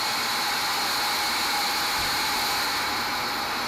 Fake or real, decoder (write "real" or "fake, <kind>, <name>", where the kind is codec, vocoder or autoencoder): real